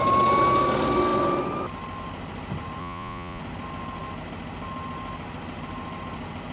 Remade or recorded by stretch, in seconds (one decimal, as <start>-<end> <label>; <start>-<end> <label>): 0.0-2.8 recorded; 2.8-3.4 remade; 3.4-6.5 recorded